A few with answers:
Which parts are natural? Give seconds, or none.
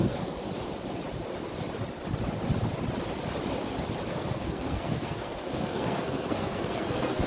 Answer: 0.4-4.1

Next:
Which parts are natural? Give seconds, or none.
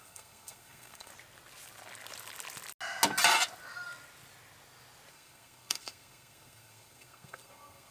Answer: 1.1-5.1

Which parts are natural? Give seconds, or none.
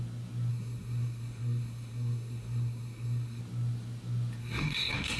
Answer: 0.0-0.5; 3.4-4.4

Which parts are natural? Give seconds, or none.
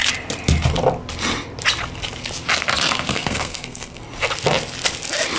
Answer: 0.0-3.1; 4.0-5.4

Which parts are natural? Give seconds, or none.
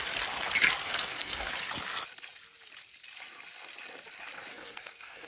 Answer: 0.0-0.8; 1.5-4.5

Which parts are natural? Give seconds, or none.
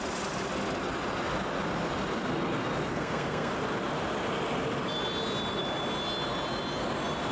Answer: 0.0-2.9; 3.5-7.3